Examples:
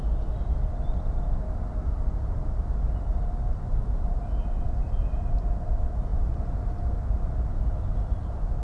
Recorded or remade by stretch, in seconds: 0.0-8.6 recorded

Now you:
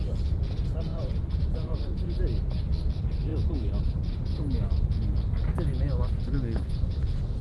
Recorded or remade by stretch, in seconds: 0.0-0.9 recorded; 0.9-2.0 remade; 2.0-7.4 recorded

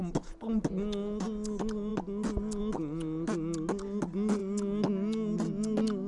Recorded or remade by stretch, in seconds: 0.0-6.1 recorded

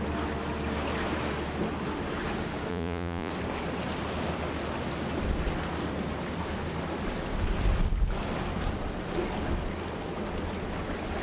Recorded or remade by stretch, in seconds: 0.0-2.7 recorded; 2.7-3.3 remade; 3.3-11.2 recorded

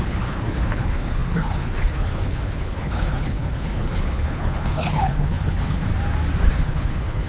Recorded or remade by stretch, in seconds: 0.0-5.9 remade; 5.9-6.5 recorded; 6.5-7.3 remade

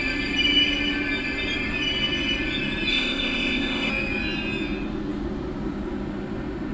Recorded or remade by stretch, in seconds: 0.0-2.9 recorded; 2.9-3.9 remade; 3.9-6.7 recorded

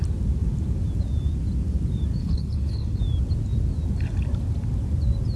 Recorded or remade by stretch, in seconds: 0.0-2.2 recorded; 2.2-3.0 remade; 3.0-5.4 recorded